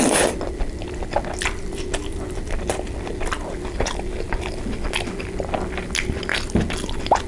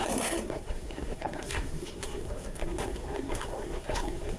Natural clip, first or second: first